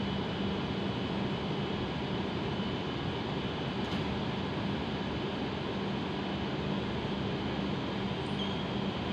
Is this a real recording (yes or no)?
yes